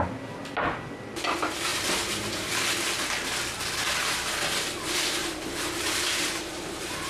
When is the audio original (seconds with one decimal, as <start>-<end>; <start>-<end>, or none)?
0.0-1.7; 2.5-5.2